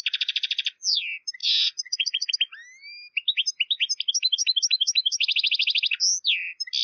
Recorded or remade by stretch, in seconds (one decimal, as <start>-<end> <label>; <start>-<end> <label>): 0.0-1.4 recorded; 1.4-2.3 remade; 2.3-6.8 recorded